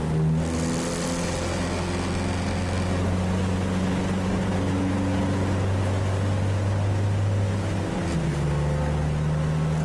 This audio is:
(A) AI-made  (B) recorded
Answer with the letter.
B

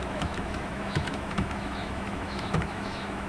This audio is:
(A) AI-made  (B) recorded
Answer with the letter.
A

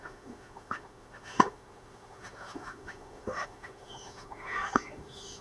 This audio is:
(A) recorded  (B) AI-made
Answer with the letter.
B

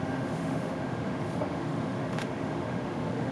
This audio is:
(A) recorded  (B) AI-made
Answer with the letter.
B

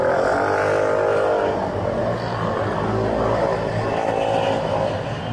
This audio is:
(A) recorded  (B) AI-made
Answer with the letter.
A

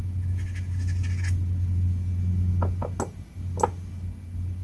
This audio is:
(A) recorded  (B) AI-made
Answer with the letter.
A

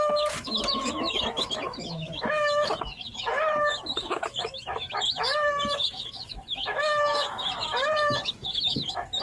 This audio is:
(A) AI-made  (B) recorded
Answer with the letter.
A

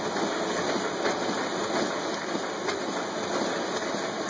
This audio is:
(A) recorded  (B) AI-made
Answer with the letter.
A